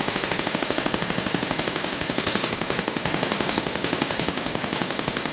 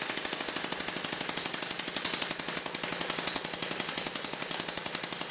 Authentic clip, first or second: second